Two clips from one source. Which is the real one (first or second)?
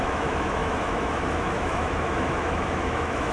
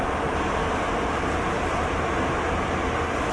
second